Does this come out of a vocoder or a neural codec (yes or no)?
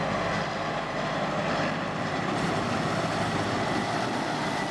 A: no